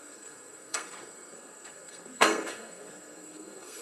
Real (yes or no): no